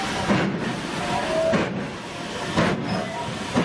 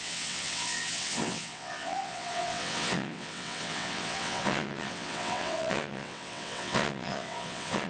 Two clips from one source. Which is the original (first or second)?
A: first